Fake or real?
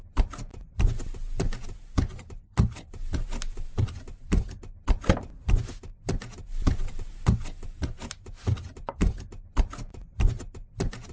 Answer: real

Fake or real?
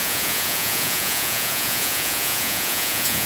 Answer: fake